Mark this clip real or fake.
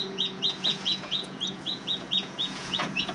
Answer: fake